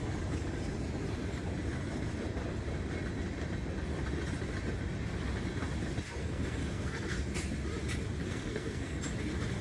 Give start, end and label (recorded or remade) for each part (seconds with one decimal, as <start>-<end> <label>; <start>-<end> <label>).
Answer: 0.0-6.2 recorded; 6.2-7.2 remade; 7.2-8.2 recorded; 8.2-9.0 remade; 9.0-9.6 recorded